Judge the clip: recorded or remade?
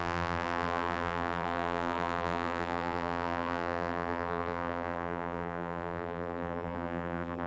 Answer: remade